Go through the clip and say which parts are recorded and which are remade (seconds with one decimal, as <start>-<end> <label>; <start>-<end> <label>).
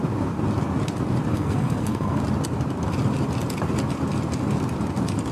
0.0-1.3 recorded; 1.3-2.2 remade; 2.2-5.3 recorded